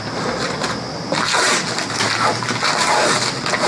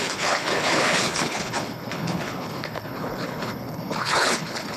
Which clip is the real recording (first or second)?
first